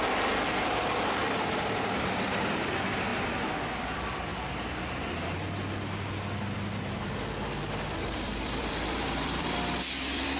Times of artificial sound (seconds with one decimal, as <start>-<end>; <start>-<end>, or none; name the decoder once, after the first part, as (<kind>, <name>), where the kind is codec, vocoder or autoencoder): 0.0-3.1 (vocoder, BigVGAN v2); 3.7-4.3; 7.9-10.4